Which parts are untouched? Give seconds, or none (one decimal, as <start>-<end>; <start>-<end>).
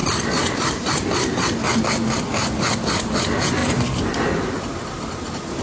0.0-5.6